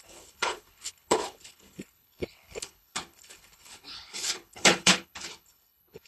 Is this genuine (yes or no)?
no